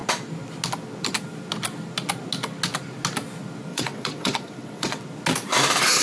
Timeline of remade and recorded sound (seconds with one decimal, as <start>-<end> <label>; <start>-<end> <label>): 0.0-3.7 recorded; 3.7-5.0 remade; 5.0-6.0 recorded